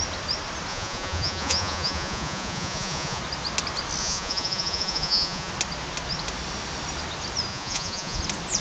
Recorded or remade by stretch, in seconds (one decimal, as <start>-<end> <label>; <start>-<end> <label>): 0.0-0.7 recorded; 0.7-3.2 remade; 3.2-4.0 recorded; 4.0-5.5 remade; 5.5-7.5 recorded; 7.5-8.2 remade; 8.2-8.6 recorded